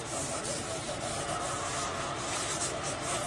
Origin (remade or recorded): remade